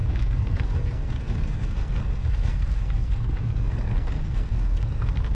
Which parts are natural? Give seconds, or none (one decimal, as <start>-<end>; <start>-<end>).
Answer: none